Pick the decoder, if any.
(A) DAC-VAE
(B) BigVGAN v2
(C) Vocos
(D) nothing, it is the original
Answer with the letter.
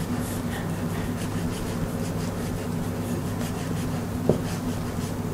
D